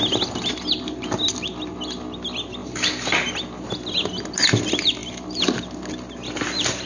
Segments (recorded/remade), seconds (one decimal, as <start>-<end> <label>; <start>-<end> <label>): 0.0-6.9 recorded